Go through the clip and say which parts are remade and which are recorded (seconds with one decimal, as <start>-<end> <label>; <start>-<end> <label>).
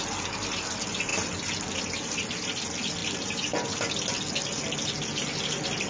0.0-5.9 recorded